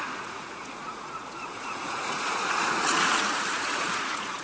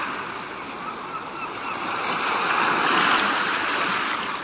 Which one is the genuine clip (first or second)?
second